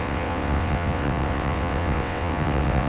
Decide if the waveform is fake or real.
fake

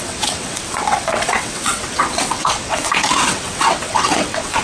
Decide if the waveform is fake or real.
fake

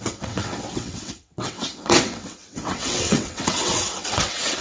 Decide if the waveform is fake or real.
fake